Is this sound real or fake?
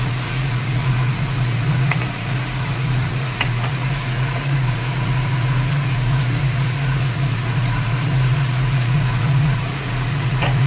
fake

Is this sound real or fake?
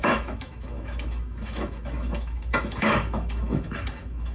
fake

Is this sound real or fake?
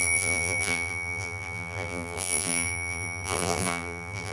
fake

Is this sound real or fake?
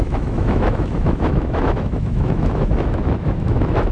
fake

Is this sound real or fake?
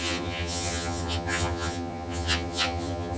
fake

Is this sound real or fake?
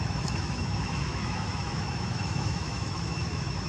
fake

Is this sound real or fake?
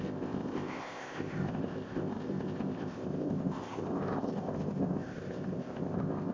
fake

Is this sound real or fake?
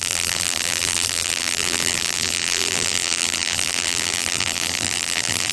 fake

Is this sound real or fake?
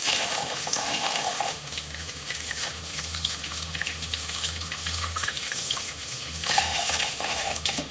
fake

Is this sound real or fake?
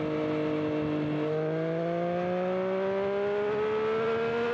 real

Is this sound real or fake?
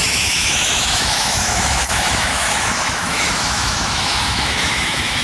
fake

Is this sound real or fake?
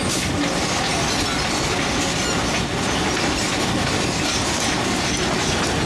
real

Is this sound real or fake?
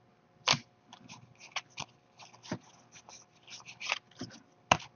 real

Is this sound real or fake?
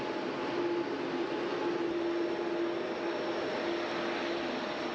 real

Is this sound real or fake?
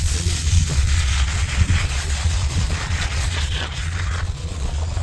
fake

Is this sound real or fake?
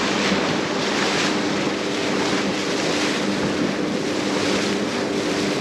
real